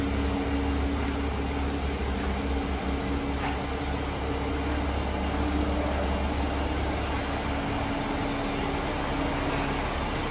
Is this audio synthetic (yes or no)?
no